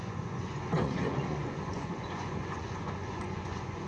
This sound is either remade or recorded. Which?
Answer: remade